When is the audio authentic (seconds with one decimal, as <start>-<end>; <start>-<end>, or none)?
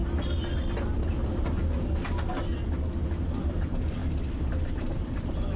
0.0-5.6